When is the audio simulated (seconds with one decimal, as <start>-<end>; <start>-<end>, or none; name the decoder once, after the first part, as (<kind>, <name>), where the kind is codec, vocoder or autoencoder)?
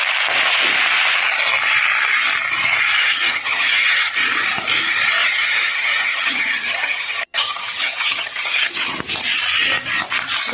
3.0-4.1 (vocoder, HiFi-GAN); 5.2-8.9